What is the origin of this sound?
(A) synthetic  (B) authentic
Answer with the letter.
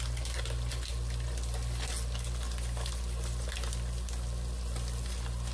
B